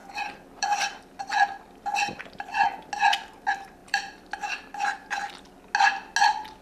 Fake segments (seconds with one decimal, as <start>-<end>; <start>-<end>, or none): 0.0-1.0; 3.8-5.5